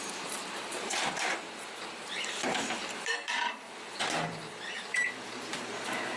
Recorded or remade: remade